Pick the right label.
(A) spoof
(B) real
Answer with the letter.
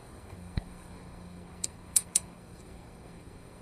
A